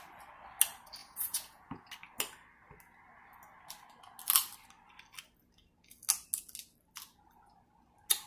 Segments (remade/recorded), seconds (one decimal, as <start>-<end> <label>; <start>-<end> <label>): 0.0-1.0 recorded; 1.0-1.9 remade; 1.9-8.3 recorded